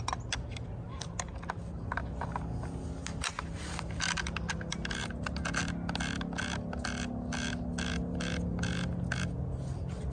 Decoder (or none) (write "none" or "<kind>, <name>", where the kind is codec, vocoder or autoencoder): none